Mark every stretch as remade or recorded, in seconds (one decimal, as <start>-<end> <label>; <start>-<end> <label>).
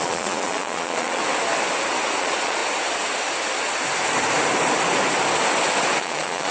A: 0.0-1.2 remade; 1.2-2.2 recorded; 2.2-2.6 remade; 2.6-6.0 recorded; 6.0-6.5 remade